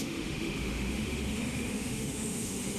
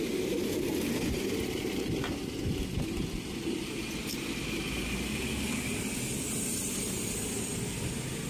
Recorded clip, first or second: second